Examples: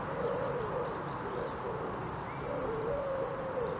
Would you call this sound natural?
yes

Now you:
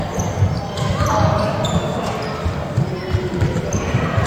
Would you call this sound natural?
yes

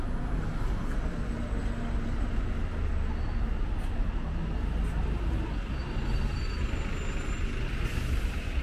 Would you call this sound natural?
yes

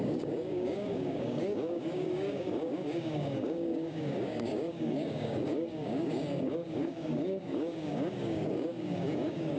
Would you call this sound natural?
no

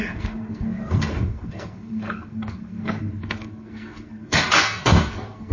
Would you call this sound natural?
no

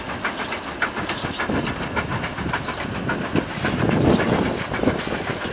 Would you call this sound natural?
yes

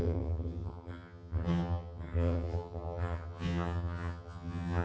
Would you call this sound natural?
no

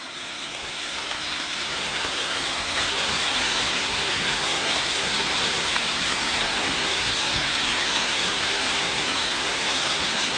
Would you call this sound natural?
no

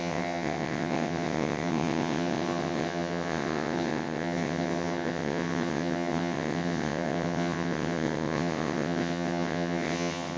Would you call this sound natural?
no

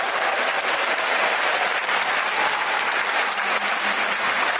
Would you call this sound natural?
no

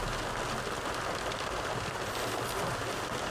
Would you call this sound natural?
yes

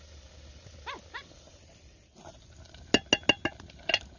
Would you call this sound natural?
yes